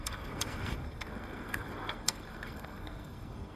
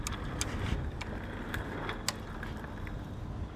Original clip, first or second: second